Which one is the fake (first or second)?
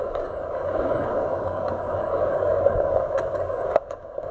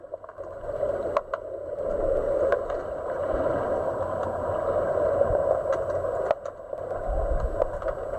first